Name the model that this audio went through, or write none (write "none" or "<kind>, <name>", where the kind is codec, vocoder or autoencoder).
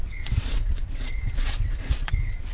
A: vocoder, WaveNeXt